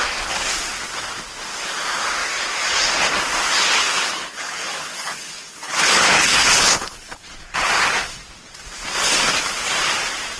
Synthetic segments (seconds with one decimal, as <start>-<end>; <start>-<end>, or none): 3.8-7.7